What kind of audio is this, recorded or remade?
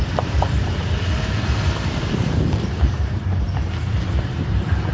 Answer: remade